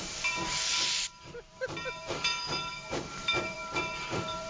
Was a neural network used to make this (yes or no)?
yes